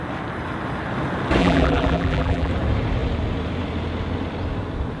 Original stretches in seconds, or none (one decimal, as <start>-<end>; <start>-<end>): 0.0-1.4; 2.5-5.0